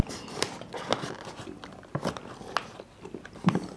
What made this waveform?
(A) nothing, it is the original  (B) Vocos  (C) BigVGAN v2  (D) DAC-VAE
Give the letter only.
A